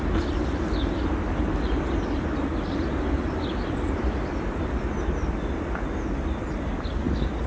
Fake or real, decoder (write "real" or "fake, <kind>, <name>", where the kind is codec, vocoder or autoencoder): real